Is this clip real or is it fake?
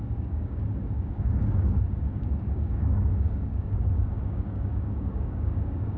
fake